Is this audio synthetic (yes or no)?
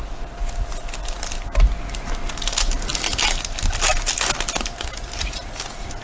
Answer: no